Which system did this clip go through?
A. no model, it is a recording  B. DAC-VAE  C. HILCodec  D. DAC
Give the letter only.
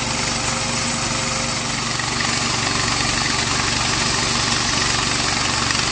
A